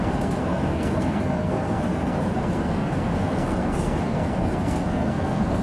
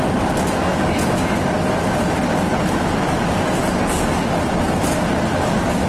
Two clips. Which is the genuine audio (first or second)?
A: second